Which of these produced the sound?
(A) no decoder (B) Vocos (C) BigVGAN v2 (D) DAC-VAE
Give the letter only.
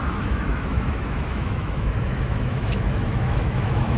D